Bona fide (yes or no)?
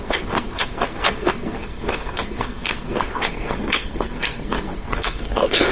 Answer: no